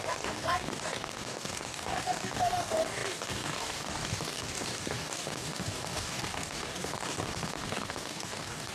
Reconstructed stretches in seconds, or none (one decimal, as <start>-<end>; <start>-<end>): 0.0-8.7